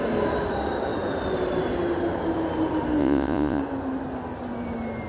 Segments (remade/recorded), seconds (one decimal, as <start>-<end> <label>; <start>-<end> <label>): 0.0-3.0 recorded; 3.0-3.6 remade; 3.6-5.1 recorded